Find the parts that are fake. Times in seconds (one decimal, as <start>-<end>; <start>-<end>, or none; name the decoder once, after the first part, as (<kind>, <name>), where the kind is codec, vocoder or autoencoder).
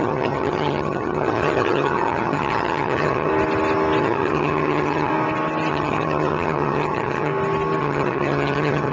0.0-3.3 (vocoder, HiFi-GAN); 4.0-5.1; 5.7-7.3; 7.8-8.9